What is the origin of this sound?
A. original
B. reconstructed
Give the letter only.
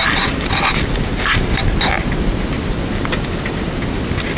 A